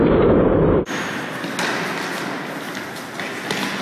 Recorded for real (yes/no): yes